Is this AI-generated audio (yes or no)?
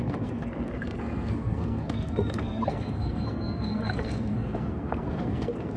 yes